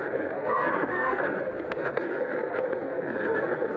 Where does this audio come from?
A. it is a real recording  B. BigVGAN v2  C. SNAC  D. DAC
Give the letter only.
C